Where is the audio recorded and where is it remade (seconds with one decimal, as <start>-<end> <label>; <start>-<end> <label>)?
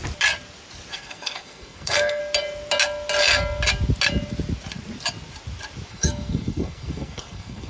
0.0-0.9 recorded; 0.9-2.2 remade; 2.2-5.9 recorded; 5.9-7.7 remade